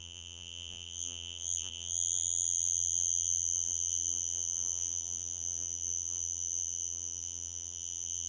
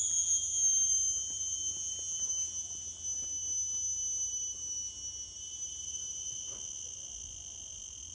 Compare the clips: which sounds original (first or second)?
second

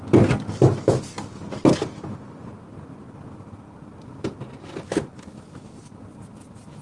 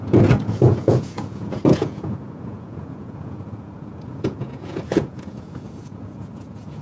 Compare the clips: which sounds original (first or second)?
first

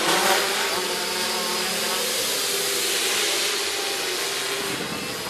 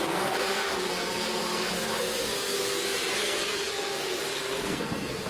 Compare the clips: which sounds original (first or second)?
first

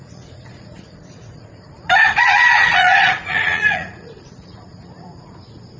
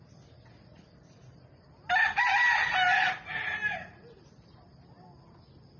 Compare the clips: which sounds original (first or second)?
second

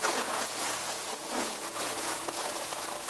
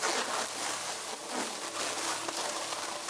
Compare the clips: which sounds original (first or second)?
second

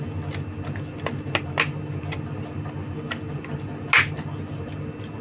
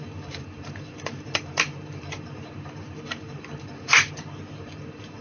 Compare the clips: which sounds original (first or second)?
first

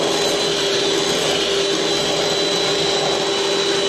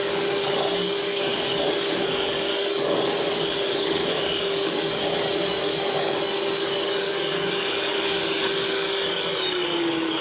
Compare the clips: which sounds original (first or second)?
first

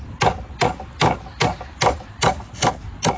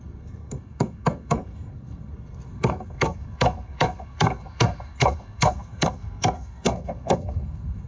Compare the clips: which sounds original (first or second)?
first